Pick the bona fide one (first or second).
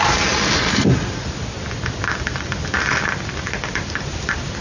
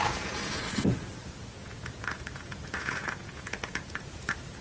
first